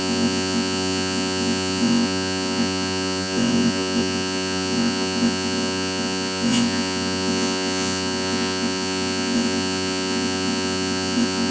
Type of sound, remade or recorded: remade